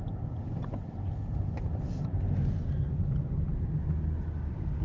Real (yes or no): yes